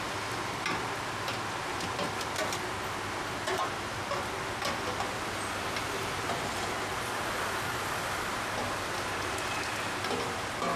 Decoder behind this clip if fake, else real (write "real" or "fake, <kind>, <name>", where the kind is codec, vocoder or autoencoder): real